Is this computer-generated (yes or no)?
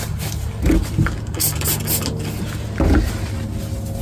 no